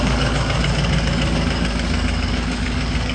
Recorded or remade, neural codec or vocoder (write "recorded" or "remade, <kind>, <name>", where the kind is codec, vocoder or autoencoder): remade, codec, DAC